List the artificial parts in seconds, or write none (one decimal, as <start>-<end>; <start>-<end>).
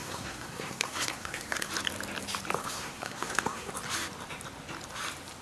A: 0.0-1.7; 2.6-3.7